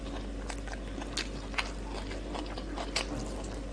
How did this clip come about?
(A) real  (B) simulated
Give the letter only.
A